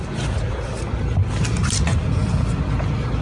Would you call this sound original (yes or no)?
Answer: yes